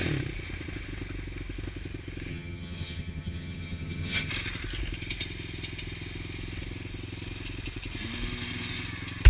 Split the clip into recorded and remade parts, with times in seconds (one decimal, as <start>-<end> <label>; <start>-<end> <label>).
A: 0.0-2.3 recorded; 2.3-4.3 remade; 4.3-9.3 recorded